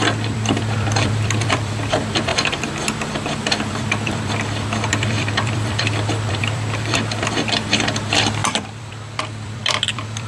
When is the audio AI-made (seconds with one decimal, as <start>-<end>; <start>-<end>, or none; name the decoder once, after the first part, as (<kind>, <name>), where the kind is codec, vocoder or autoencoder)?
0.0-10.3 (vocoder, BigVGAN v2)